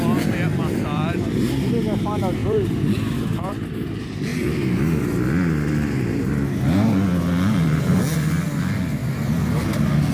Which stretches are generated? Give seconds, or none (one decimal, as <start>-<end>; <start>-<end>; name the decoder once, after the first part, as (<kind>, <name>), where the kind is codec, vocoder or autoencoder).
0.5-1.5 (vocoder, BigVGAN v2); 2.4-3.5; 9.0-9.6